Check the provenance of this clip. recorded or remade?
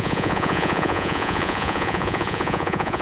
remade